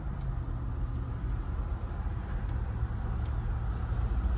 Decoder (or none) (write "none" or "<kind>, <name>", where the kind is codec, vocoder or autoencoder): none